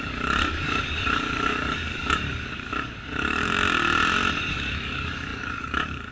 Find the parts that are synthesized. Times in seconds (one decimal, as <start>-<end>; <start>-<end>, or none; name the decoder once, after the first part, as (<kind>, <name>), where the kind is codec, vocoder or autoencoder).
0.0-3.5 (codec, DAC); 4.4-6.1

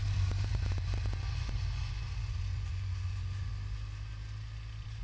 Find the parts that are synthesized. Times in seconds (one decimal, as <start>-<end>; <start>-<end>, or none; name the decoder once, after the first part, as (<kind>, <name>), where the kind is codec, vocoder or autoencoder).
0.5-3.5 (vocoder, Vocos)

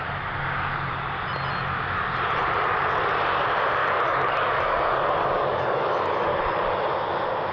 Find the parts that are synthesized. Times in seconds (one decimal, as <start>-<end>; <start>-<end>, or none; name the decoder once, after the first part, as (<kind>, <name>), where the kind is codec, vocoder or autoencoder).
3.8-6.4 (codec, DAC)